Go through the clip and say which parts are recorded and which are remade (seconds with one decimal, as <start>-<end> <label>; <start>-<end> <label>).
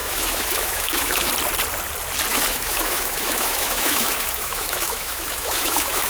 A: 0.0-1.3 remade; 1.3-2.3 recorded; 2.3-6.1 remade